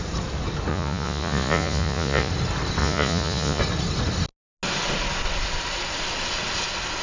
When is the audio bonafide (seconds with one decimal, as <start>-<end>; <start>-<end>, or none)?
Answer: 0.0-0.7; 2.3-2.8; 3.6-7.0